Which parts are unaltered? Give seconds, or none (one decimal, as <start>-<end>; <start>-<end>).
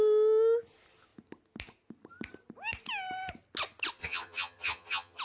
0.0-4.0